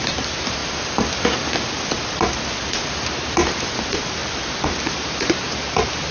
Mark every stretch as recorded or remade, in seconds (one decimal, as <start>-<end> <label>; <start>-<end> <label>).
0.0-0.6 remade; 0.6-2.8 recorded; 2.8-4.2 remade; 4.2-4.8 recorded; 4.8-6.1 remade